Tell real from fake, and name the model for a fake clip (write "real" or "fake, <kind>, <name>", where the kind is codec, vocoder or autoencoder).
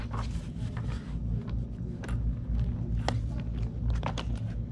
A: real